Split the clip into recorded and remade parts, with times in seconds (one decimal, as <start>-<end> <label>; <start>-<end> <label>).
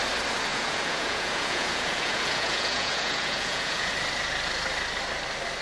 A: 0.0-0.5 recorded; 0.5-3.9 remade; 3.9-5.6 recorded